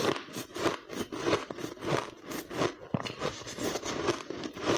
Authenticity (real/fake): real